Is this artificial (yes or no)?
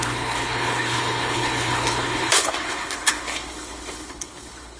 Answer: yes